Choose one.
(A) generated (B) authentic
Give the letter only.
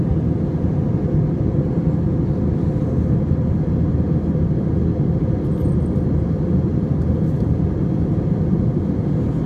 B